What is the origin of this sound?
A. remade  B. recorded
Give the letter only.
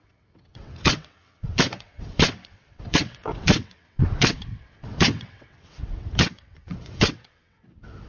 A